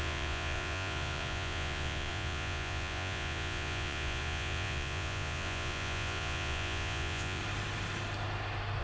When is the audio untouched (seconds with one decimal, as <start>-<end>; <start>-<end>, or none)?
7.4-8.8